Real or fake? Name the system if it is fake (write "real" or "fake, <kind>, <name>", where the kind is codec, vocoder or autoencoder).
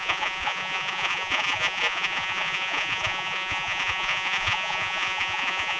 fake, vocoder, Vocos